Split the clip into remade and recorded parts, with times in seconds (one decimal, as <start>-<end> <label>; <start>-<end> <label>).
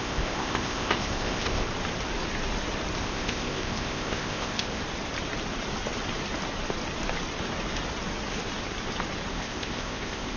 0.0-1.7 remade; 1.7-3.0 recorded; 3.0-4.8 remade; 4.8-9.3 recorded; 9.3-10.4 remade